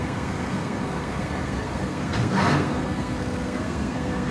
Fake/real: fake